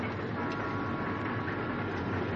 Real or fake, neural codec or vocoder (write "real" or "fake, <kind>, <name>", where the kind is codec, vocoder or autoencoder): real